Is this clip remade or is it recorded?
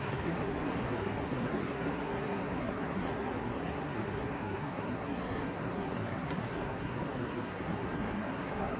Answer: remade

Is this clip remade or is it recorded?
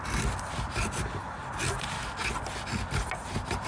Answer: recorded